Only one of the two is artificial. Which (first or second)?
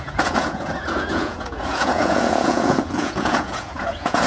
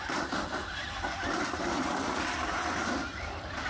first